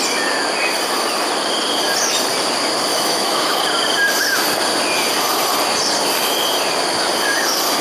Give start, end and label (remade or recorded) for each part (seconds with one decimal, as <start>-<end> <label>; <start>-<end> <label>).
0.0-2.9 recorded; 2.9-3.6 remade; 3.6-7.8 recorded